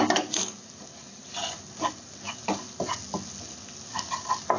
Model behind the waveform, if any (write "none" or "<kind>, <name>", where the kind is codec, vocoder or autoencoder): none